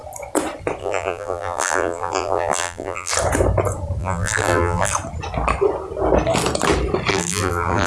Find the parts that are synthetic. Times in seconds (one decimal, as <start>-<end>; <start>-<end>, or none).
0.8-3.1; 4.0-4.9; 7.1-7.9